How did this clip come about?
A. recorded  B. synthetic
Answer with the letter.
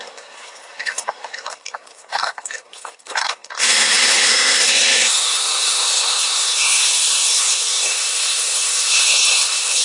B